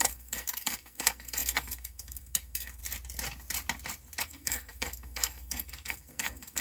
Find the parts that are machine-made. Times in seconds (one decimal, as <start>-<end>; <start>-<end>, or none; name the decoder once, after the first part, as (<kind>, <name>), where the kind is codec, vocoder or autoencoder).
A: 0.0-2.8 (codec, SNAC); 4.2-6.6